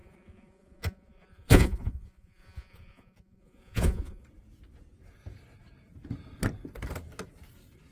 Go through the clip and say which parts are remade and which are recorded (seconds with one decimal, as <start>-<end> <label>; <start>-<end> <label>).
0.0-4.2 remade; 4.2-7.9 recorded